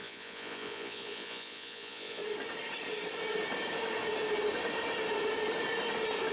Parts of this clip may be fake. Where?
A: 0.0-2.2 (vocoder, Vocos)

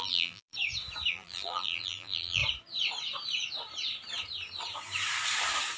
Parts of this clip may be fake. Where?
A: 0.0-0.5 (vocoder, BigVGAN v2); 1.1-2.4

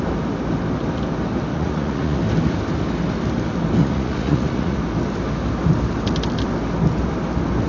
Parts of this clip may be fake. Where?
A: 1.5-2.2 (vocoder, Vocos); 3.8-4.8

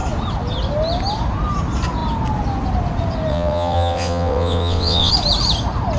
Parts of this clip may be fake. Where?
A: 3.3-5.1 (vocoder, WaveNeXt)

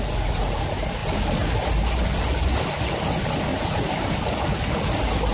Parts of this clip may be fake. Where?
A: 3.5-4.1 (vocoder, BigVGAN v2)

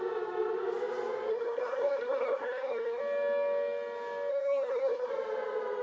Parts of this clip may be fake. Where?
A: 1.3-3.0 (codec, SNAC); 4.3-5.1

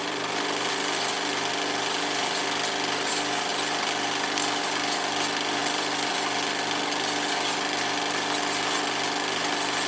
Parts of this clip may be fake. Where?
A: 0.0-0.7 (vocoder, BigVGAN v2); 5.6-6.1

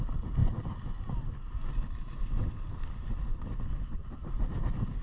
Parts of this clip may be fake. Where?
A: none